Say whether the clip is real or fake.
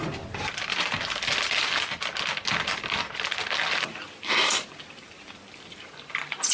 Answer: real